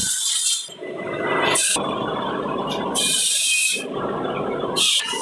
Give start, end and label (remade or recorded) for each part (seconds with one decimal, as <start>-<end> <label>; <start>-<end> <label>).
0.0-0.7 recorded; 0.7-5.2 remade